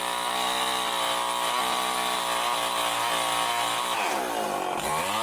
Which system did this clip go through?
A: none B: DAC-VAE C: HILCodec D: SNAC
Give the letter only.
A